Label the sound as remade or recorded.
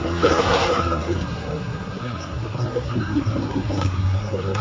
remade